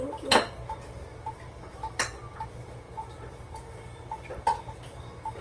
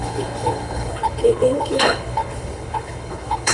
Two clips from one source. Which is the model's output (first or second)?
second